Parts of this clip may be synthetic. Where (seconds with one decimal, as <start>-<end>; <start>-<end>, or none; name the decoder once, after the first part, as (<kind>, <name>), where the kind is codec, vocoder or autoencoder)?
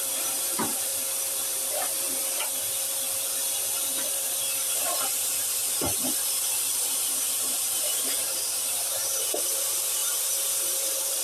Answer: 0.0-0.9 (vocoder, BigVGAN v2); 1.5-2.2; 4.1-11.2